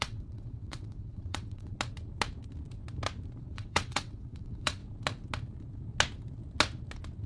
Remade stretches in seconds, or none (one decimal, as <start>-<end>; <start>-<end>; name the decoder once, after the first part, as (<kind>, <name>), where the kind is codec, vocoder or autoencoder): 0.0-1.7 (vocoder, WaveNeXt); 3.4-4.8